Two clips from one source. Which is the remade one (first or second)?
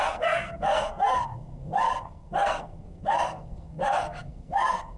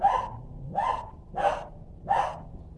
first